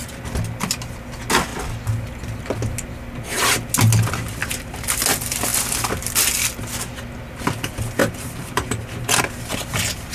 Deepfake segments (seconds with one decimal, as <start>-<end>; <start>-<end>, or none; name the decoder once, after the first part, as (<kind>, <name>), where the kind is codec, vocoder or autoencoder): 4.4-5.0 (vocoder, BigVGAN v2); 8.0-9.2